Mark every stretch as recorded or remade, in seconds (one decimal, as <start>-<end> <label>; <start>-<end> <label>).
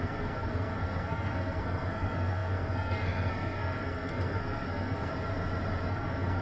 0.0-5.1 remade; 5.1-5.9 recorded; 5.9-6.4 remade